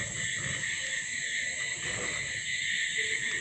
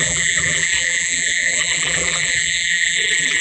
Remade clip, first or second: second